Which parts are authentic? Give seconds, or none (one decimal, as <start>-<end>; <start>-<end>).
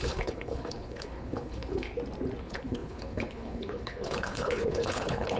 1.9-2.4